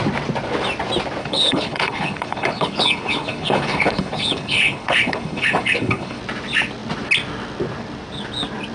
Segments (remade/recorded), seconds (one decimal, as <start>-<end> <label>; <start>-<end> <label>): 0.0-1.2 recorded; 1.2-6.2 remade; 6.2-8.7 recorded